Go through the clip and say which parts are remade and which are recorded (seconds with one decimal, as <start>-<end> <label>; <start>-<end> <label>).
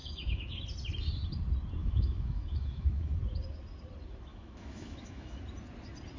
0.0-0.6 remade; 0.6-1.8 recorded; 1.8-3.2 remade; 3.2-4.3 recorded; 4.3-5.4 remade; 5.4-6.2 recorded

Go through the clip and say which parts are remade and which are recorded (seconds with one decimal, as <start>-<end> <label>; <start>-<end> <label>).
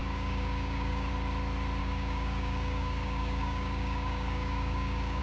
0.0-1.1 remade; 1.1-1.8 recorded; 1.8-5.2 remade